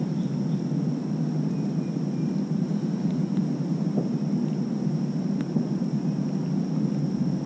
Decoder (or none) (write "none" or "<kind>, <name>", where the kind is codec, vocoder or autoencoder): none